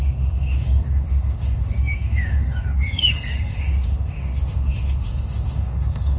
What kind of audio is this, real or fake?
fake